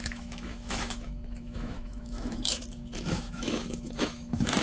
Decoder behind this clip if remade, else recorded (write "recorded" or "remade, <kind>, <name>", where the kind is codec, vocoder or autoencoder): remade, autoencoder, DAC-VAE